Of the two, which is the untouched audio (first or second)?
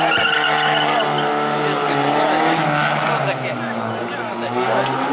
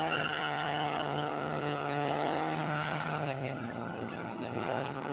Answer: first